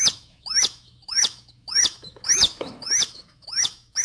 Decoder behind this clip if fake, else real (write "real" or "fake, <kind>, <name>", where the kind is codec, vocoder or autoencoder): fake, autoencoder, DAC-VAE